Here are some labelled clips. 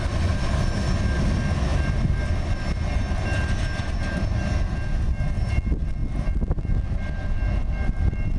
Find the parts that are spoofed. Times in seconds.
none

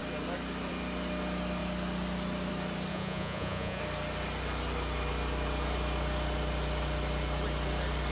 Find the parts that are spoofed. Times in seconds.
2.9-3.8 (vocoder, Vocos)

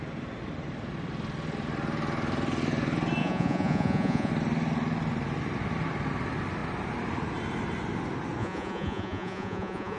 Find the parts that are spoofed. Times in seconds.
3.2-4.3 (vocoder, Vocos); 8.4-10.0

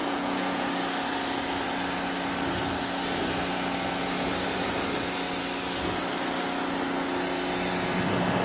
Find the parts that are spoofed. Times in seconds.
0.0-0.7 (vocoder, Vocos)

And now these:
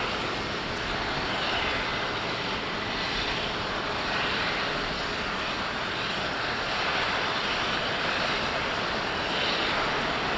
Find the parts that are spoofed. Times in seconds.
none

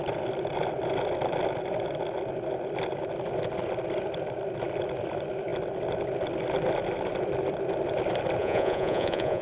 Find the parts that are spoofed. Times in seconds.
8.4-9.4 (vocoder, Vocos)